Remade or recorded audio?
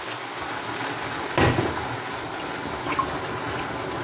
recorded